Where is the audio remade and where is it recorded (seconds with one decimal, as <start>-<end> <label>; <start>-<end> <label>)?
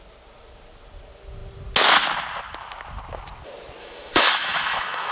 0.0-3.8 recorded; 3.8-5.1 remade